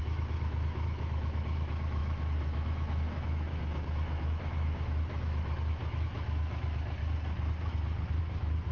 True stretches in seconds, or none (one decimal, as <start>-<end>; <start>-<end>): 7.0-8.2